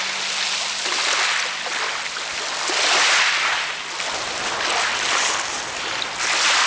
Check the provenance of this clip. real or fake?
real